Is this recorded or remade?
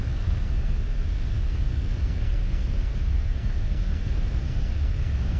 remade